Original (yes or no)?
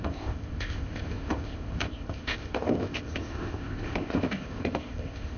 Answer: no